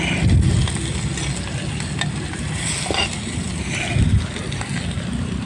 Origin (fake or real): real